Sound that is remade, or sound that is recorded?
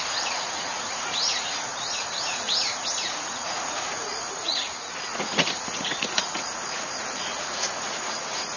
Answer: remade